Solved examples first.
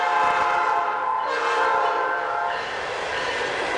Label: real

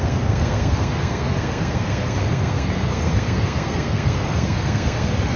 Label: fake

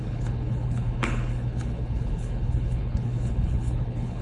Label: fake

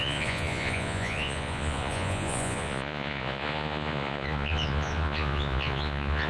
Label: fake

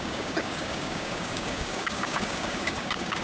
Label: fake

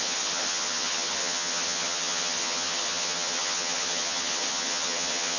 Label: fake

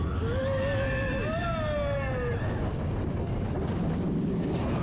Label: real